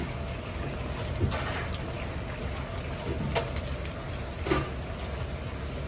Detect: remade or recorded recorded